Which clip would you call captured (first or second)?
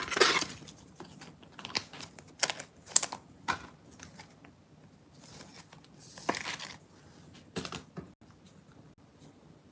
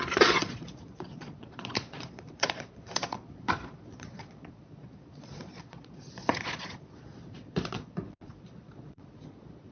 first